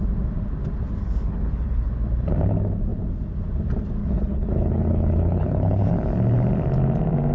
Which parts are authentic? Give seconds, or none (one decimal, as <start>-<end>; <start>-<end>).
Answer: 0.0-1.0; 1.9-4.0; 5.9-7.3